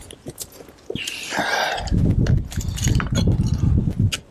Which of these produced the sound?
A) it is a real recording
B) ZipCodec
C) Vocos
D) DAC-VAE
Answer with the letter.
A